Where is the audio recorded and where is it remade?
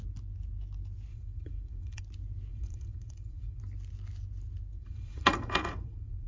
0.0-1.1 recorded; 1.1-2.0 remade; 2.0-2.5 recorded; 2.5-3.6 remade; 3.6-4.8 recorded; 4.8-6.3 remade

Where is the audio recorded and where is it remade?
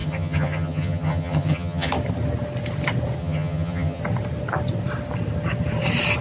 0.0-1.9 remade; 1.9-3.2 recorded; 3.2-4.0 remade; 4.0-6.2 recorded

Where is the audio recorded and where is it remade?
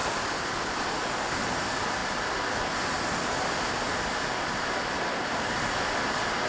0.0-6.5 recorded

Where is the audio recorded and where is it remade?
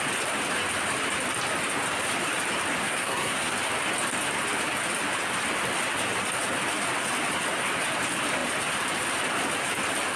0.0-2.8 recorded; 2.8-3.5 remade; 3.5-10.2 recorded